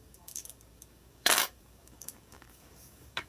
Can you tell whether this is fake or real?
fake